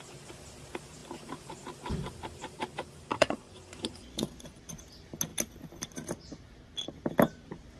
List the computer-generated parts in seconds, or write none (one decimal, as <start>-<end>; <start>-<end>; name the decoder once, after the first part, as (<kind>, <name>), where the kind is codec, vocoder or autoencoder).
3.1-4.6 (vocoder, Vocos)